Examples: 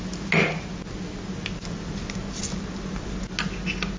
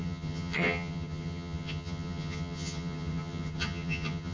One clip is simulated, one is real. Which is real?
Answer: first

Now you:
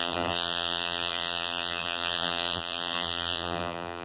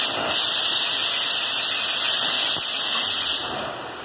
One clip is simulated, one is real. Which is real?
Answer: second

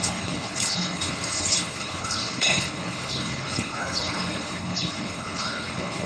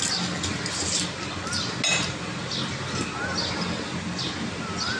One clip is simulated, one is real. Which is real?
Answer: second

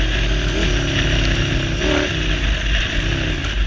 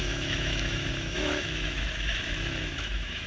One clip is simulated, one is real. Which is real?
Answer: first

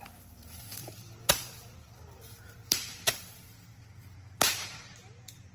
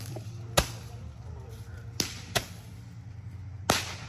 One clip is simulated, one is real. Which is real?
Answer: second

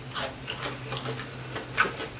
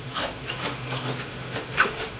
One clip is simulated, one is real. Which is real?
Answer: first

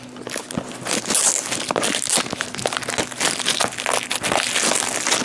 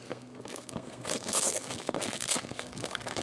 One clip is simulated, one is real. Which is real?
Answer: first